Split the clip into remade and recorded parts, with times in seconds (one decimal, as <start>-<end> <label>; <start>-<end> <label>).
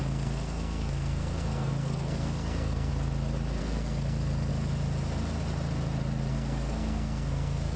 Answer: 0.0-2.9 remade; 2.9-3.6 recorded; 3.6-4.5 remade; 4.5-6.3 recorded; 6.3-7.8 remade